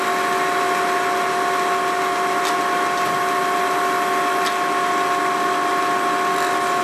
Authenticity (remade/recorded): recorded